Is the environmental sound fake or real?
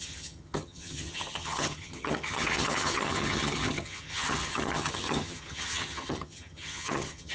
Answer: fake